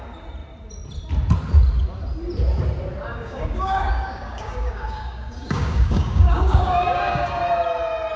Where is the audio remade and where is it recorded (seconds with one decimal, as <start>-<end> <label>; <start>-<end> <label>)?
0.0-3.1 recorded; 3.1-7.4 remade; 7.4-8.2 recorded